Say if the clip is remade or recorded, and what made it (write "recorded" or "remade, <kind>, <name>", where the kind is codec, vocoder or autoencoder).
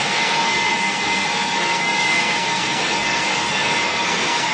remade, codec, SNAC